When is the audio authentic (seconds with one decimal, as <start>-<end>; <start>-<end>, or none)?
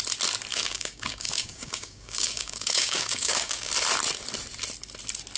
0.0-0.5; 3.7-5.4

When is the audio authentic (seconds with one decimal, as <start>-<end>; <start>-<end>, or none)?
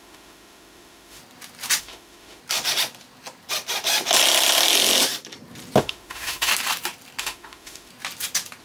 1.2-1.8; 2.4-5.8; 6.5-7.2; 7.9-8.6